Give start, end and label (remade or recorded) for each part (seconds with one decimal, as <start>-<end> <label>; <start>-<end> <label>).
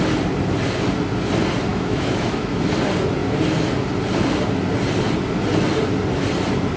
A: 0.0-1.7 recorded; 1.7-2.6 remade; 2.6-6.8 recorded